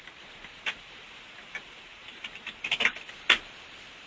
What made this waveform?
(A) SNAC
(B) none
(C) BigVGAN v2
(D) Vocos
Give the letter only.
B